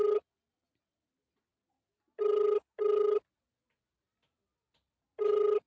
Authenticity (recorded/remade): recorded